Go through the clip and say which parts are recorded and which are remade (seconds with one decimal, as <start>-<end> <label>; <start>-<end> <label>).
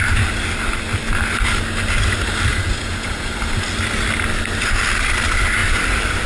0.0-2.5 recorded; 2.5-3.4 remade; 3.4-6.3 recorded